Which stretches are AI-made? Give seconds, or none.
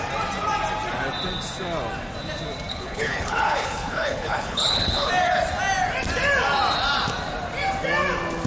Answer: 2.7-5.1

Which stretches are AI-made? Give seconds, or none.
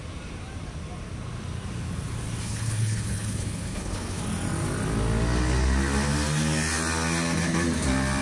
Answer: 2.4-4.2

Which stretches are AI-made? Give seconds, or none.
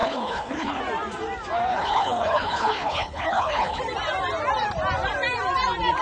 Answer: 0.0-0.8; 1.7-3.8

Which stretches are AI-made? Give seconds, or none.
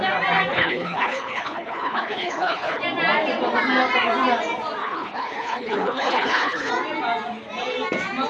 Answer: 0.5-2.8; 4.8-6.7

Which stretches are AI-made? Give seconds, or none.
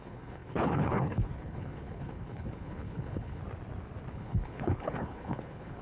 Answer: 0.0-3.4; 4.1-5.8